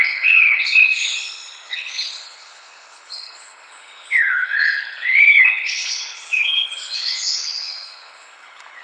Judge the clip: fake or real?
fake